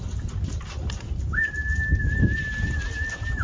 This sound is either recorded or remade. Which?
recorded